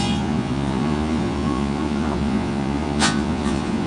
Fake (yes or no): yes